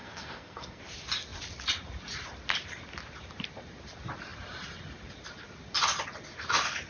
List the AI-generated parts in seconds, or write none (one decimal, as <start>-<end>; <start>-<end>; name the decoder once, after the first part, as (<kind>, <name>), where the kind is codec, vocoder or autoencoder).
0.0-0.8 (codec, SNAC)